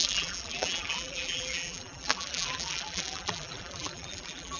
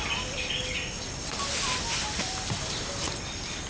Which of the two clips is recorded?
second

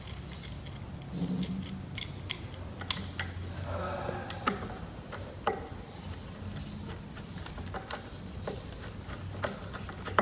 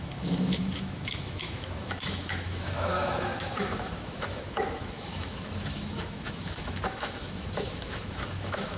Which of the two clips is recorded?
first